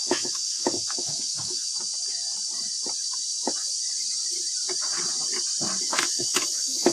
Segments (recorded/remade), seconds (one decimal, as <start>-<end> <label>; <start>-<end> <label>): 0.0-1.7 remade; 1.7-5.8 recorded; 5.8-6.9 remade